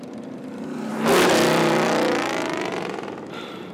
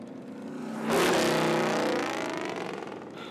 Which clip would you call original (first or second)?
second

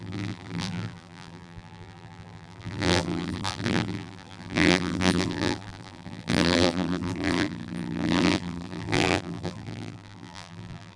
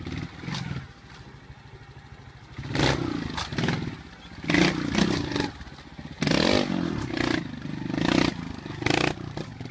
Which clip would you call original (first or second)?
second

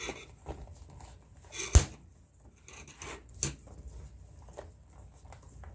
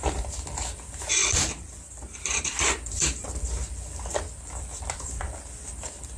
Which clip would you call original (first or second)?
first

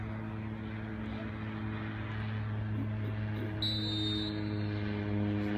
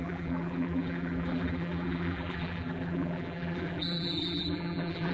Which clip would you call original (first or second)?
first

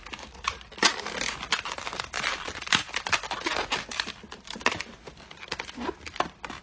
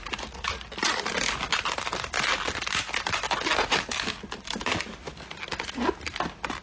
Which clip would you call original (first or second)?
second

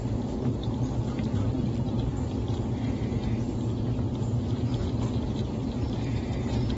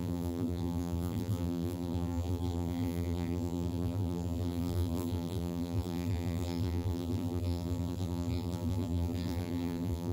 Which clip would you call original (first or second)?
first